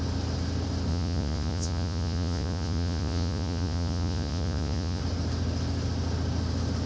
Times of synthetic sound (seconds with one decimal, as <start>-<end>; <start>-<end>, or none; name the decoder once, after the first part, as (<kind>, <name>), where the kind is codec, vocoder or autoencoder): 0.9-5.0 (vocoder, Vocos)